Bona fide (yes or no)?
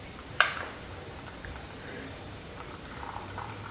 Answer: no